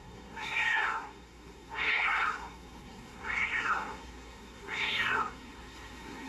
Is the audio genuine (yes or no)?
no